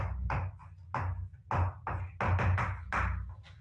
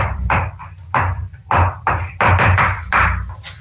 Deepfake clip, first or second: second